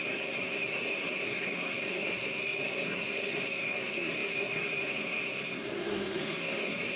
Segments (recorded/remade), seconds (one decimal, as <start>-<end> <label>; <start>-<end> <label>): 0.0-7.0 remade